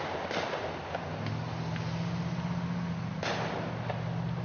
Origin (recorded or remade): recorded